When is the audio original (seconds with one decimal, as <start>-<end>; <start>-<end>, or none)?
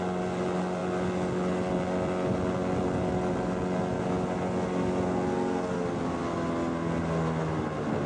0.0-8.1